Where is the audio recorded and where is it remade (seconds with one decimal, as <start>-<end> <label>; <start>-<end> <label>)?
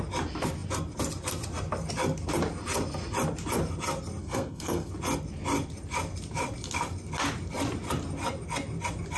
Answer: 0.0-4.2 recorded; 4.2-4.9 remade; 4.9-9.2 recorded